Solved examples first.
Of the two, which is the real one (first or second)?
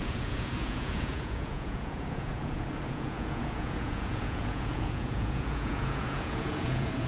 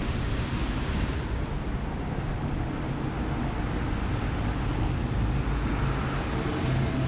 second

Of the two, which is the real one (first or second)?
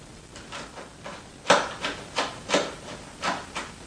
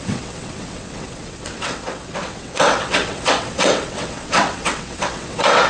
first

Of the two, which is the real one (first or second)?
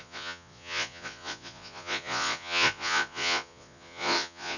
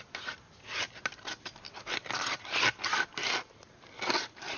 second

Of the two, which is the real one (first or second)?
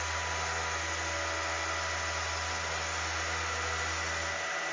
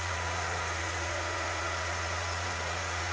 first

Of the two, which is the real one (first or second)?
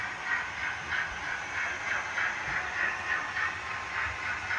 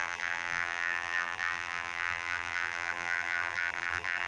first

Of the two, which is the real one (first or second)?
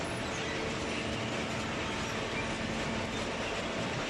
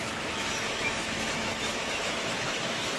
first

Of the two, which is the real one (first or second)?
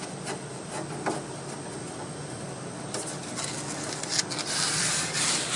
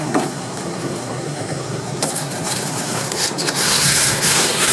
first